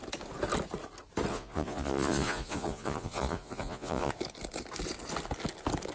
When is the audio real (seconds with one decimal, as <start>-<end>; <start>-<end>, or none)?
0.0-1.3; 4.1-5.9

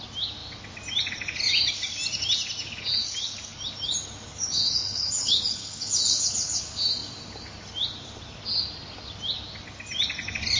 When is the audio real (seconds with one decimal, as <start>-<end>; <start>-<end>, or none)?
0.0-4.3; 6.6-10.6

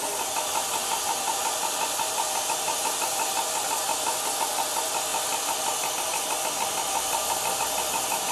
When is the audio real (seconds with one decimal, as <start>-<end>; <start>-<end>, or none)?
0.0-8.3

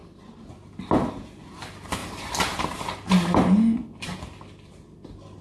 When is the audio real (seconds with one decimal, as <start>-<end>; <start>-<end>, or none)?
0.0-5.4

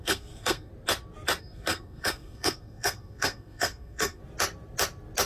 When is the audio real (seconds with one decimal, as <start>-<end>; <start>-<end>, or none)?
0.7-1.4; 4.2-5.3

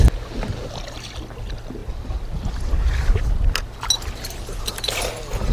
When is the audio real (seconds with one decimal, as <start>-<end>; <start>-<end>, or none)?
0.0-5.5

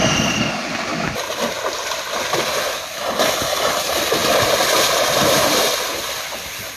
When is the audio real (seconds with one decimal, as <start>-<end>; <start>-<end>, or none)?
0.0-6.8

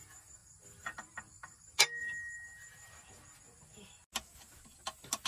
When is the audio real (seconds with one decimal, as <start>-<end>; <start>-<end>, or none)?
0.0-5.3